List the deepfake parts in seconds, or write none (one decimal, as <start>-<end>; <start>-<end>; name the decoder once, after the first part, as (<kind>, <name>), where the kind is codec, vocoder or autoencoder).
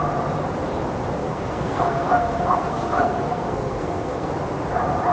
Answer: 1.2-4.3 (codec, SNAC)